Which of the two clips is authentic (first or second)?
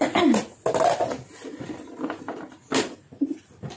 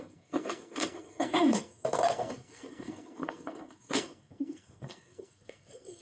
first